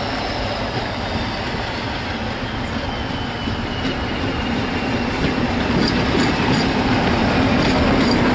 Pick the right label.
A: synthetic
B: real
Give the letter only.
A